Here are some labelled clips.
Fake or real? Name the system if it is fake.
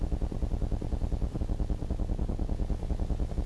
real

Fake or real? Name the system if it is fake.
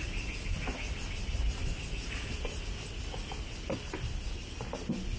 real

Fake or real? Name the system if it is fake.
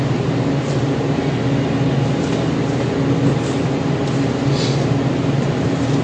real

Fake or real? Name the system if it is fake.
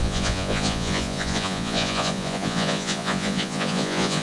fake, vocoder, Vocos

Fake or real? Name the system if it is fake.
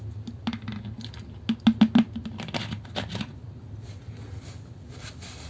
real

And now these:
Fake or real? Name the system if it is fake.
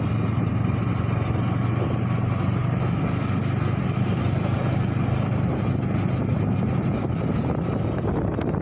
real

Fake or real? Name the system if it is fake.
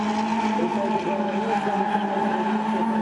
real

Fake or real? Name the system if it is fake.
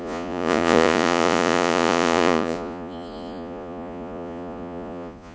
fake, vocoder, Vocos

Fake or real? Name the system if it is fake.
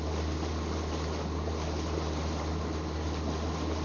real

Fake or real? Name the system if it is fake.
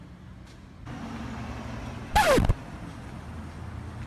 real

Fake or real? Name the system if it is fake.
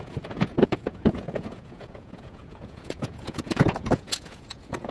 fake, vocoder, Vocos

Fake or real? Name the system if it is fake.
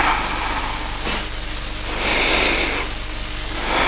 real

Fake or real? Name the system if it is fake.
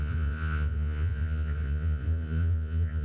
fake, vocoder, Vocos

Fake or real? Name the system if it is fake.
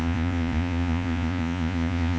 fake, vocoder, Vocos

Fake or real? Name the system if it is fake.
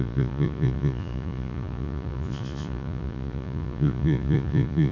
fake, vocoder, Vocos